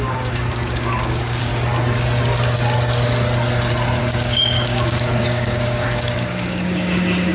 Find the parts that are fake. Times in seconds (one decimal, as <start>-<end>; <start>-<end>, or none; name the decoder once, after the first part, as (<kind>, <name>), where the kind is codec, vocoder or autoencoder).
0.0-1.5 (codec, DAC); 4.0-7.3